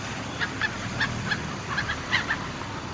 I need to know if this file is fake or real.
real